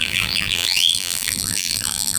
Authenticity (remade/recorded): remade